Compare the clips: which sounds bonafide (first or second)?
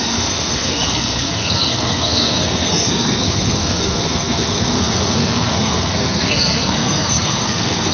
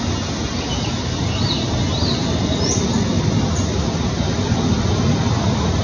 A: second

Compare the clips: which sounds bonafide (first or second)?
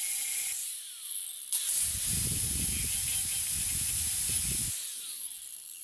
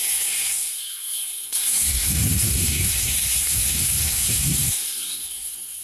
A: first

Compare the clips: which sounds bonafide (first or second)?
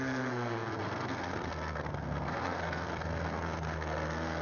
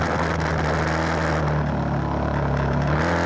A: second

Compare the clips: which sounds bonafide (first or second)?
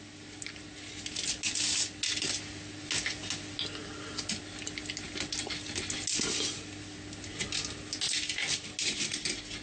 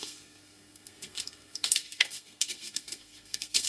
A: first